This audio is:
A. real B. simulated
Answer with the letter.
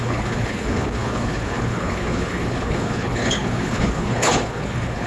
B